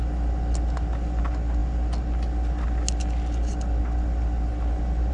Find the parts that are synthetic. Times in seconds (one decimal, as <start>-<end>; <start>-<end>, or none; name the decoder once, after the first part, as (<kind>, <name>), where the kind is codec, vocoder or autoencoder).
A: none